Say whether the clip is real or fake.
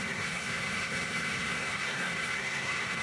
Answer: fake